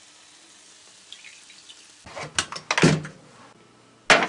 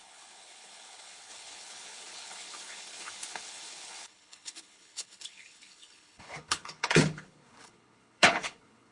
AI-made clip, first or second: second